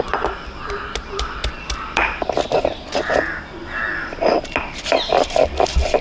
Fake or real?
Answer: real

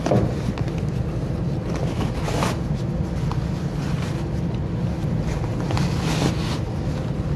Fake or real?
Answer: real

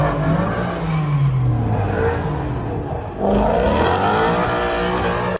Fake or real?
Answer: real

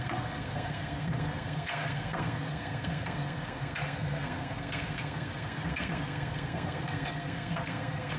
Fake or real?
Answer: fake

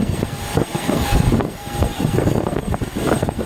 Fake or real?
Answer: fake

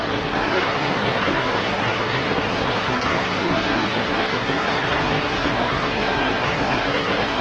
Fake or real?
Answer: fake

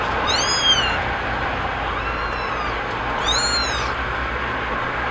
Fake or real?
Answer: real